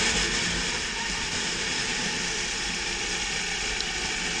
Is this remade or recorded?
recorded